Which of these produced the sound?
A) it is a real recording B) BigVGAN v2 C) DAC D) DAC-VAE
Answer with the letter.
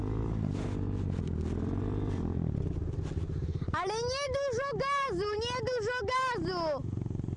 A